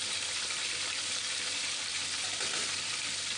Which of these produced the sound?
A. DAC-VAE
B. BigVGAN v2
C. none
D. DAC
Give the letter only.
B